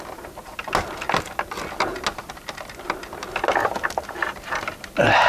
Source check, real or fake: real